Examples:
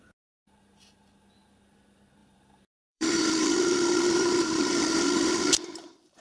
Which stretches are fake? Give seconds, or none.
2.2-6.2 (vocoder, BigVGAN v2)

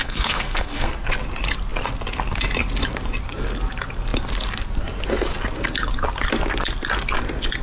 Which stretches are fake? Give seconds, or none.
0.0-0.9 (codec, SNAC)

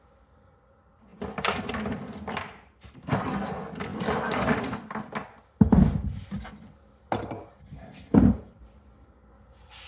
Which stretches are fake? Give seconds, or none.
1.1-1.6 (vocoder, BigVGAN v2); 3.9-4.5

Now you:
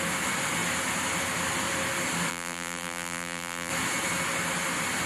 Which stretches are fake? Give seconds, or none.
2.3-3.7 (vocoder, BigVGAN v2)

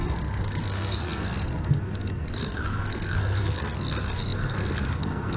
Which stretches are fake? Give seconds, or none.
0.0-5.4 (codec, SNAC)